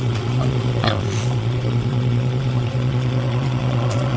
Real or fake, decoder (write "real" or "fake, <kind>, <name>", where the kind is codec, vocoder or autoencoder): fake, vocoder, Vocos